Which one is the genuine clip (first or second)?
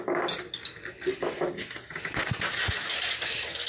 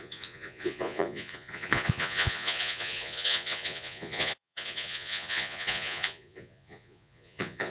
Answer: first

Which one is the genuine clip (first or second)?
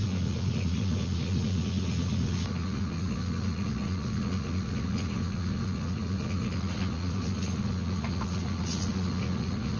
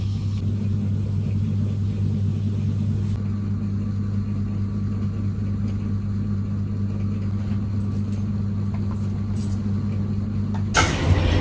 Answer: second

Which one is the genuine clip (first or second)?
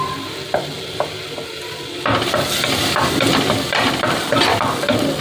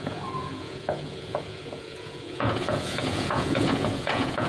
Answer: first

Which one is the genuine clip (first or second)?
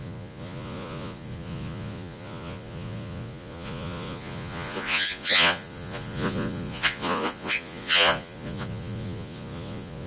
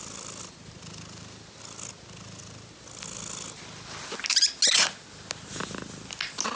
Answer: second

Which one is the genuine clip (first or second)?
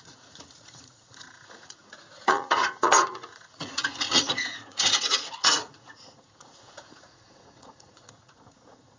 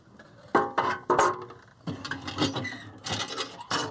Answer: second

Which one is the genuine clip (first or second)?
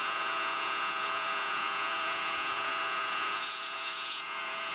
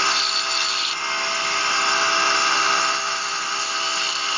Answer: second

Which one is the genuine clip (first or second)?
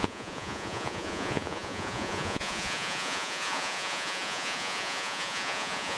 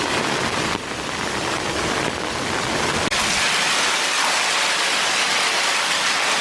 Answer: second